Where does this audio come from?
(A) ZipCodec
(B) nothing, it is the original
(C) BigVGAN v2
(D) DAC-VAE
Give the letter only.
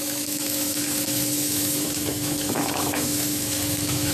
D